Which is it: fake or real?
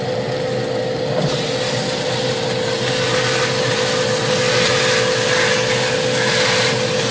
real